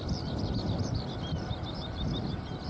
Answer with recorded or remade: recorded